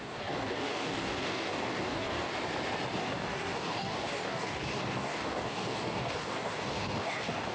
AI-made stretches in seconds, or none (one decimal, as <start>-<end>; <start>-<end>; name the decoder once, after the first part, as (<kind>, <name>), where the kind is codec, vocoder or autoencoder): 0.0-2.3 (codec, DAC); 3.0-7.5